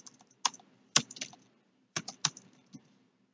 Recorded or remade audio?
recorded